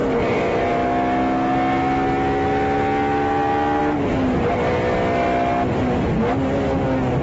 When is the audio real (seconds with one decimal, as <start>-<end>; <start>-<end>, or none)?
0.0-7.2